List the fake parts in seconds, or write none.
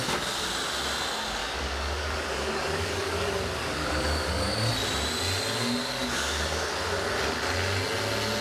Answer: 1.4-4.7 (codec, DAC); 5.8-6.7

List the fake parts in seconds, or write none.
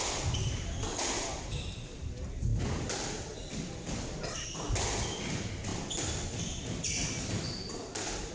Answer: 2.5-3.7 (vocoder, BigVGAN v2); 5.7-8.3